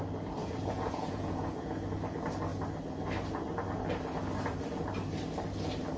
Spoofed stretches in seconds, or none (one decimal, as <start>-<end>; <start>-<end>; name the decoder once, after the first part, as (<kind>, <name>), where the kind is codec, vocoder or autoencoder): 0.4-1.7 (vocoder, Vocos)